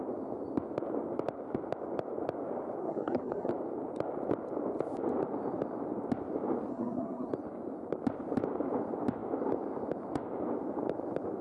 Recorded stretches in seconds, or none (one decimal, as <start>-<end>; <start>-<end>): 0.0-2.8; 3.5-6.7; 7.3-11.4